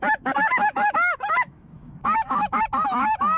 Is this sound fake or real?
fake